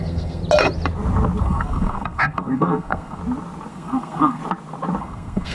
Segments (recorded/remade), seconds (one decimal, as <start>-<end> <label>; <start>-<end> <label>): 0.0-0.4 remade; 0.4-1.4 recorded; 1.4-3.2 remade; 3.2-3.7 recorded; 3.7-4.4 remade; 4.4-5.0 recorded; 5.0-5.5 remade